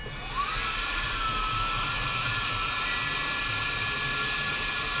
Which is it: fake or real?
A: real